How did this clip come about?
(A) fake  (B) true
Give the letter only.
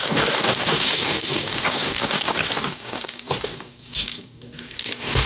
A